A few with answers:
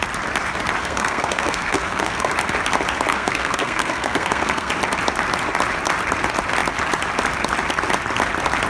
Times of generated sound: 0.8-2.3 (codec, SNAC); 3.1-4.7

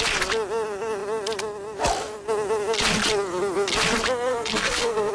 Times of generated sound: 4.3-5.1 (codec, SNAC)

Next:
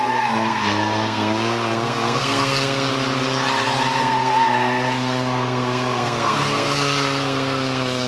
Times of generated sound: 0.0-2.9 (codec, SNAC); 4.0-8.1

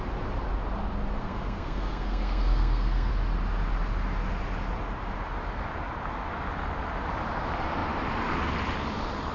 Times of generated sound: 1.2-3.1 (codec, SNAC)

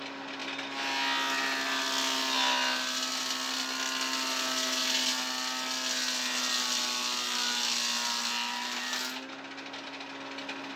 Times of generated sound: none

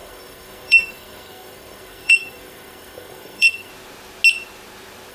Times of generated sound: 0.0-3.7 (codec, SNAC)

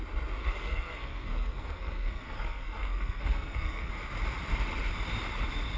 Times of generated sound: 0.4-3.9 (codec, SNAC)